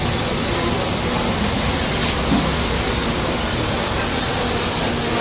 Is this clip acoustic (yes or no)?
yes